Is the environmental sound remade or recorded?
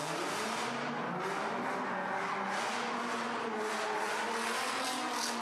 recorded